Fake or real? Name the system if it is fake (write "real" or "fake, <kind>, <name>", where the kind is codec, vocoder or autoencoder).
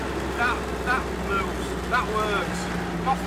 real